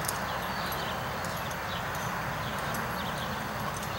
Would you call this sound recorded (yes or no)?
yes